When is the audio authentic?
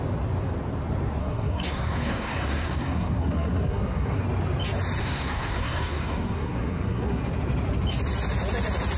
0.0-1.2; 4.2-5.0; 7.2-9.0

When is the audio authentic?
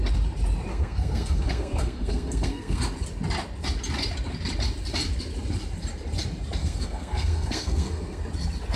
0.0-0.7; 2.8-6.6; 8.2-8.8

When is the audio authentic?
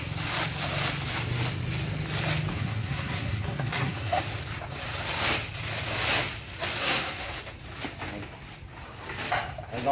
0.0-2.5; 4.2-6.8; 7.4-9.9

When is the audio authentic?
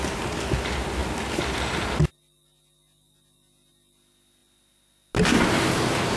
0.0-6.2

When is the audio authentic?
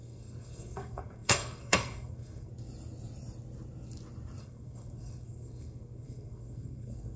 2.5-4.4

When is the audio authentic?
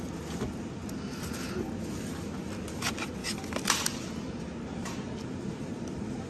0.0-6.3